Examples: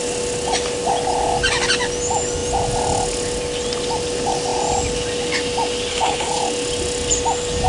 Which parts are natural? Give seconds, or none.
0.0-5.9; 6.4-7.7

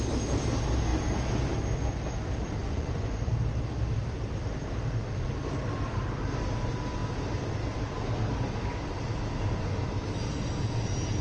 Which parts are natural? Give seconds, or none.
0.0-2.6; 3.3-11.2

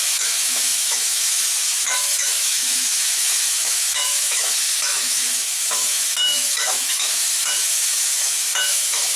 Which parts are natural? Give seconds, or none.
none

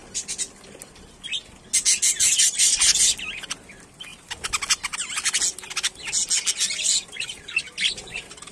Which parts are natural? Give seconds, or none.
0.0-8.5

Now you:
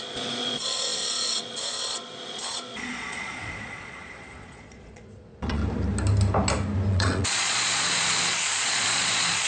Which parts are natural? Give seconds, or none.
5.6-6.9